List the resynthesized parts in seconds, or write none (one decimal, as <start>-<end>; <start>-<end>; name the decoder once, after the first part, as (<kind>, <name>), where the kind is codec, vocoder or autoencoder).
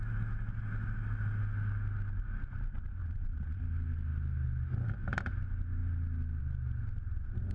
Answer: 3.0-3.6 (vocoder, Vocos)